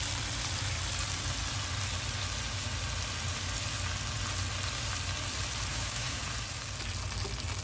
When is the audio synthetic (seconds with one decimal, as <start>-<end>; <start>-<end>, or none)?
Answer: 5.7-6.2